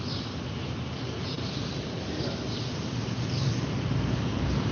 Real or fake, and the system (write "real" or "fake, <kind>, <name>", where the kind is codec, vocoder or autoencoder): real